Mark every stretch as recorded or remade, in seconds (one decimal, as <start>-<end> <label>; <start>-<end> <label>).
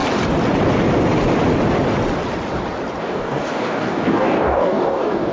0.0-3.0 recorded; 3.0-5.3 remade